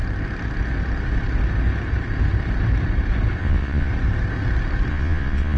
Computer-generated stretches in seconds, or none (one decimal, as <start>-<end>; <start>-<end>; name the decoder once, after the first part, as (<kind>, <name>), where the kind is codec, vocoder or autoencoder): 3.4-3.9 (vocoder, Vocos); 4.9-5.6